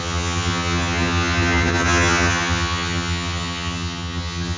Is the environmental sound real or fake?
fake